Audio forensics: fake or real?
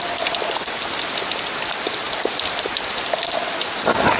real